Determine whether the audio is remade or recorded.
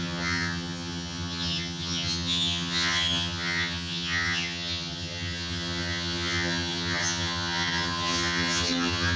remade